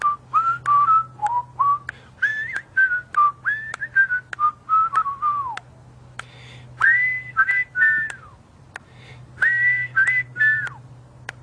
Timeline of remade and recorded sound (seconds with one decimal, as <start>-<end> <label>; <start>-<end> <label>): 0.0-11.4 recorded